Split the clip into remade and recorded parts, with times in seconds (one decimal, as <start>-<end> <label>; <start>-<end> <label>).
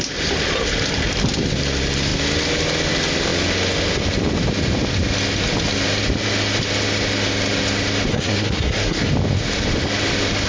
0.0-8.1 recorded; 8.1-9.1 remade; 9.1-10.5 recorded